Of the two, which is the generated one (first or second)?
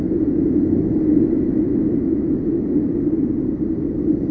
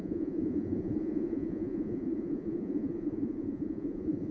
second